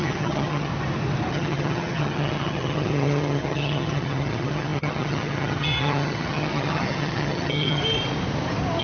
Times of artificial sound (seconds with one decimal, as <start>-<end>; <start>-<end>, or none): 0.0-0.7; 1.3-7.8